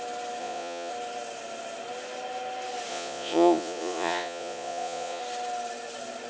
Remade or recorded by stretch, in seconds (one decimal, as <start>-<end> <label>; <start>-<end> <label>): 0.0-0.4 recorded; 0.4-0.9 remade; 0.9-2.9 recorded; 2.9-5.2 remade; 5.2-6.3 recorded